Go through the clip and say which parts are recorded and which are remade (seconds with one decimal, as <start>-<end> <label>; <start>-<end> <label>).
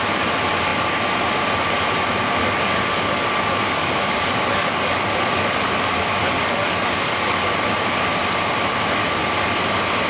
0.0-2.4 recorded; 2.4-7.5 remade; 7.5-8.7 recorded; 8.7-9.3 remade; 9.3-10.1 recorded